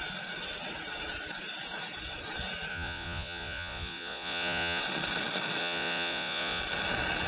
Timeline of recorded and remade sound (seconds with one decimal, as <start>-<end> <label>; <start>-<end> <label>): 0.0-2.7 recorded; 2.7-4.8 remade; 4.8-5.6 recorded; 5.6-6.6 remade; 6.6-7.3 recorded